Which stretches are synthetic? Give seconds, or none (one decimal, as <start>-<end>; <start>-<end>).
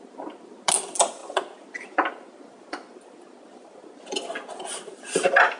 none